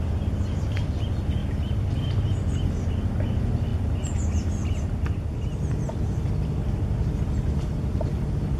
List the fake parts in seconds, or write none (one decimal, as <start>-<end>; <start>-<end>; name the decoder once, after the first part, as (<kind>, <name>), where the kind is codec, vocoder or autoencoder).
none